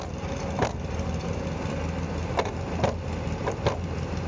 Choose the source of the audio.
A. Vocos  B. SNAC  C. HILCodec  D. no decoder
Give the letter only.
D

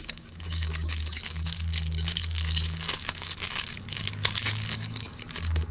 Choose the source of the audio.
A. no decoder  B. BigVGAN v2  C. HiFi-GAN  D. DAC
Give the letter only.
D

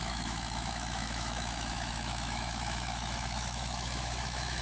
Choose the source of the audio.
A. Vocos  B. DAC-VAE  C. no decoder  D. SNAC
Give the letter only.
B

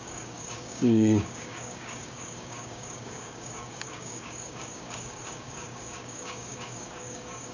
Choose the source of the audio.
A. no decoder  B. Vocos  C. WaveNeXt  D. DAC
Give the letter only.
D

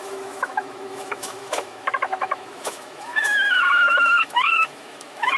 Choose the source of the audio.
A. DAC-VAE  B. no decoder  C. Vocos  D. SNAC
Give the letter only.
A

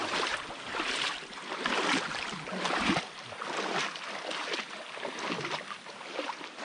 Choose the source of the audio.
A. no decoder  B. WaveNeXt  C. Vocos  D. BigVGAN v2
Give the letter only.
A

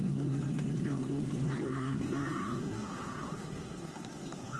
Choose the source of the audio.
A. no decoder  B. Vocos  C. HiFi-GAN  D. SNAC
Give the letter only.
D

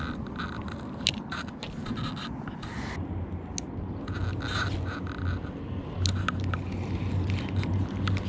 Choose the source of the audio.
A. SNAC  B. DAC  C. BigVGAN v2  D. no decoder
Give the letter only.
D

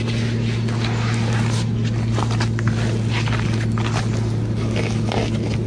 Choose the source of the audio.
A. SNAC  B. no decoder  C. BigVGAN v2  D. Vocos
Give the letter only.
B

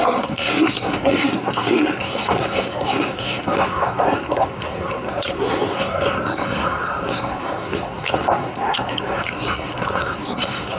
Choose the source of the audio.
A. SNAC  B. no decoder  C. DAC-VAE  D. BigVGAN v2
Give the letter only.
A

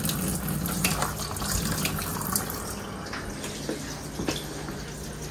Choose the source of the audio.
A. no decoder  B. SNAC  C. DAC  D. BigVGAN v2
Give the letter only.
A